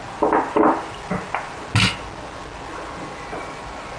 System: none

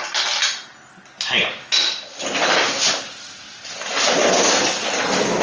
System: none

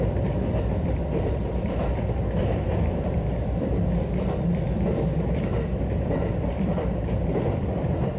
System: vocoder, BigVGAN v2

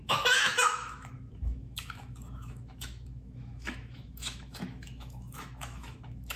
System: autoencoder, DAC-VAE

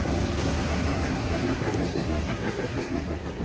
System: codec, SNAC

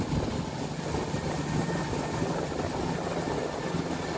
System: none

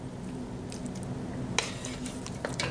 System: none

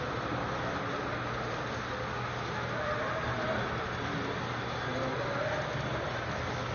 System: none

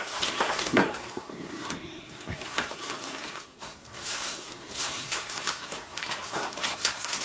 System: codec, SNAC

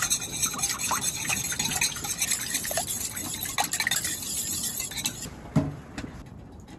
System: none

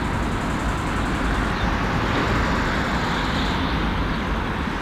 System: none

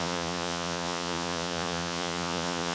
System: vocoder, Vocos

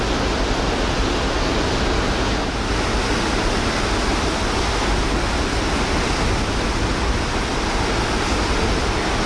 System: none